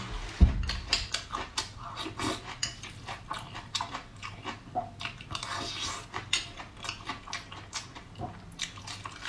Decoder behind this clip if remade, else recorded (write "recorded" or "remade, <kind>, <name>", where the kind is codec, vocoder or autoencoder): recorded